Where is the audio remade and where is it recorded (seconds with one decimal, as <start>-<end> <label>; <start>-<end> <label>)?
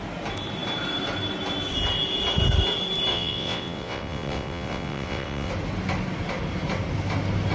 0.0-3.1 recorded; 3.1-5.5 remade; 5.5-7.5 recorded